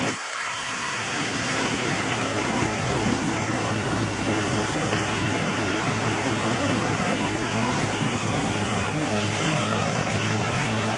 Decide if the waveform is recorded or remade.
remade